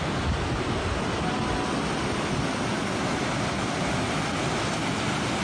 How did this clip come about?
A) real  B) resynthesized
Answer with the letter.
A